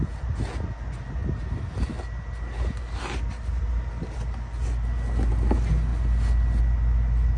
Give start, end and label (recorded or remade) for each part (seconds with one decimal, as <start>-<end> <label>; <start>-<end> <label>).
0.0-7.4 recorded